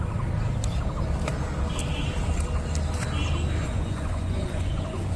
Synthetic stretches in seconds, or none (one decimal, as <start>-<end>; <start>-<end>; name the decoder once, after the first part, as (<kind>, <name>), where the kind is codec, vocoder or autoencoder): 3.6-5.2 (vocoder, Vocos)